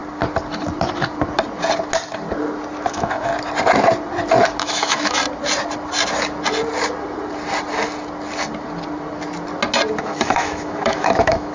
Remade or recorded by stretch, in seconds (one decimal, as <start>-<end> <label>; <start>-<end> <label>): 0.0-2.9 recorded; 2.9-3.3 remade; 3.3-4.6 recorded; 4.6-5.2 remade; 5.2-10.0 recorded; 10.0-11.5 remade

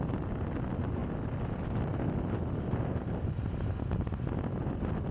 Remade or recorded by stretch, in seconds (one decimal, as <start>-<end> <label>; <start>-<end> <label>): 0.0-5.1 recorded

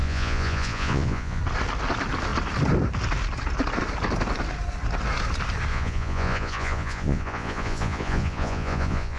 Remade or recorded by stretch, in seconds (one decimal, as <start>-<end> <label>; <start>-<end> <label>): 0.0-1.4 remade; 1.4-5.7 recorded; 5.7-9.2 remade